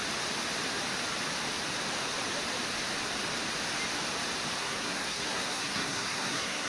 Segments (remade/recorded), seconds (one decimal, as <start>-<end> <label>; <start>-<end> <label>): 0.0-4.6 recorded; 4.6-6.7 remade